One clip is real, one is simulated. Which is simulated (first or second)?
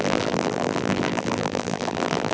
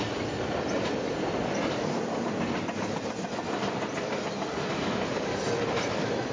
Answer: first